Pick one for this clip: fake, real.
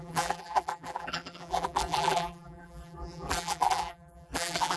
fake